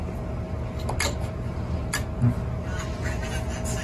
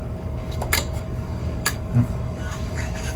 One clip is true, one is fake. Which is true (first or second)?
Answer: first